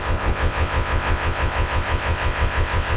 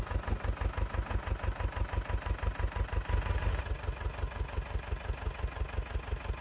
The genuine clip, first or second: second